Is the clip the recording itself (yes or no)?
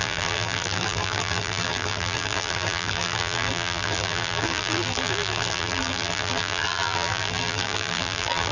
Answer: no